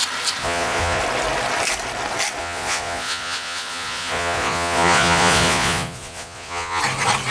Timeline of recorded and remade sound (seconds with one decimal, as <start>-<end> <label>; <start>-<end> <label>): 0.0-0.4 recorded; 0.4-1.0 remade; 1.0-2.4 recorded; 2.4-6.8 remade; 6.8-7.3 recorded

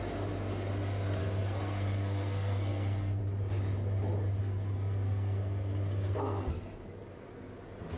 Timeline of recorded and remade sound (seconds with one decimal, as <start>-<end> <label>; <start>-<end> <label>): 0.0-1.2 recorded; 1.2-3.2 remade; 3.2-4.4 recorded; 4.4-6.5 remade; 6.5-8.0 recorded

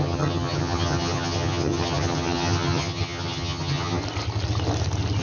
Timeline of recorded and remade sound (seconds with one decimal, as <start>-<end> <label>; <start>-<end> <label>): 0.0-4.0 remade; 4.0-5.2 recorded

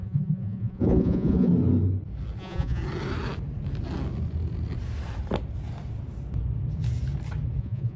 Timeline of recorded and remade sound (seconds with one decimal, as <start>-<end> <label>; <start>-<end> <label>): 0.0-1.5 remade; 1.5-2.4 recorded; 2.4-2.8 remade; 2.8-7.6 recorded; 7.6-8.0 remade

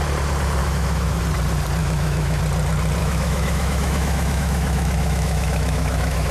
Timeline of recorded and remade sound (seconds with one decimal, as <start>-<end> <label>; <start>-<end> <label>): 0.0-0.6 recorded; 0.6-1.2 remade; 1.2-1.8 recorded; 1.8-2.4 remade; 2.4-3.0 recorded; 3.0-6.3 remade